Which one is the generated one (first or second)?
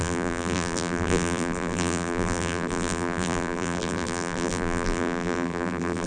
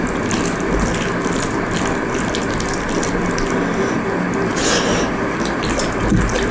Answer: first